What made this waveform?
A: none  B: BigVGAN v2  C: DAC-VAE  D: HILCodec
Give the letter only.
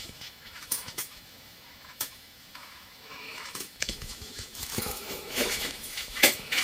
C